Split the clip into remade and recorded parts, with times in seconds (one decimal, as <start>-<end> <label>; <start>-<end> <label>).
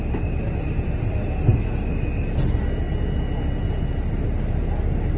0.0-5.2 recorded